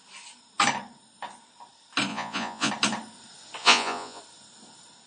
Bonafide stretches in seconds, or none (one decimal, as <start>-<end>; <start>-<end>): 0.0-2.1; 2.7-3.6; 4.2-5.1